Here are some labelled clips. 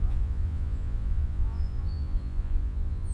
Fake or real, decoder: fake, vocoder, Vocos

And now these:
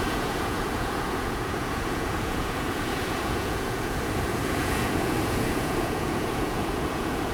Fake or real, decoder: fake, vocoder, Vocos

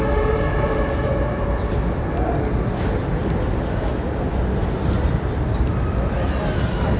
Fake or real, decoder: real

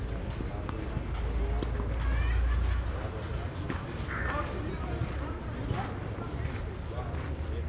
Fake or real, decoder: real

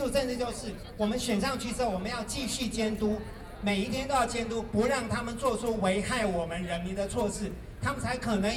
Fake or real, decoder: fake, vocoder, Vocos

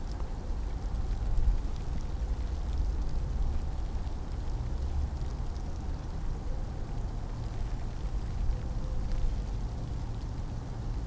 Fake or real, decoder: real